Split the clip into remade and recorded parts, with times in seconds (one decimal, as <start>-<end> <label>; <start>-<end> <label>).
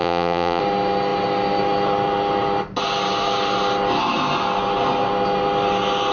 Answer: 0.0-0.6 remade; 0.6-6.1 recorded